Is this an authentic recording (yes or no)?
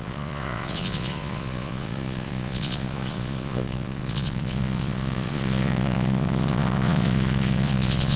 no